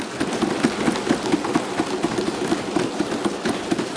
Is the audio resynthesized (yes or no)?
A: no